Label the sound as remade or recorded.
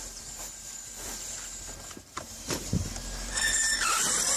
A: remade